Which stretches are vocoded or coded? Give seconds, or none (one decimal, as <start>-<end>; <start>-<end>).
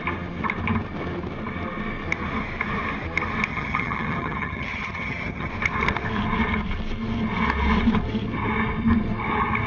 3.5-5.5